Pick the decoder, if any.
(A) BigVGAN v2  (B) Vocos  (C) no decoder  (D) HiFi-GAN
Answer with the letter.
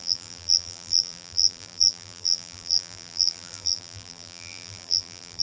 A